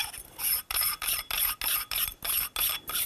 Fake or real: real